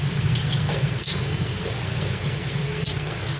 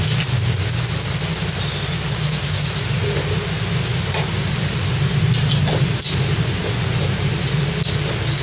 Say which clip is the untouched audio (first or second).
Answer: second